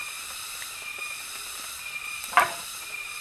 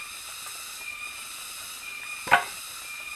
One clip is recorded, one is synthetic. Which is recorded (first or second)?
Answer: second